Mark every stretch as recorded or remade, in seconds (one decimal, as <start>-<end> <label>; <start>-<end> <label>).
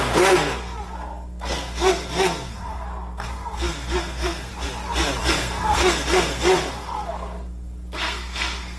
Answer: 0.0-4.5 remade; 4.5-5.2 recorded; 5.2-8.8 remade